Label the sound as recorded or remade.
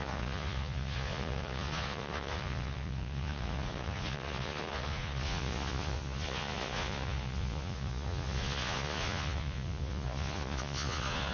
remade